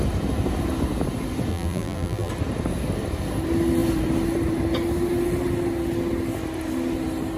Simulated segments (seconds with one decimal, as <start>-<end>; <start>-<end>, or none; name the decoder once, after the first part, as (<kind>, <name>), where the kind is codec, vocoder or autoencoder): 1.5-2.3 (vocoder, BigVGAN v2)